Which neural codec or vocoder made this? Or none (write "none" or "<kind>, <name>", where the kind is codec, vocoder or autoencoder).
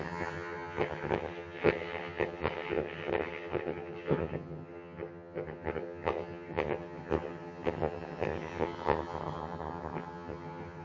vocoder, HiFi-GAN